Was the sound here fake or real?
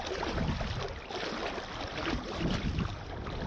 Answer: real